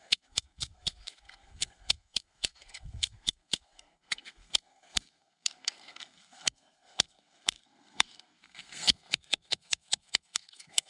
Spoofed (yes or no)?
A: yes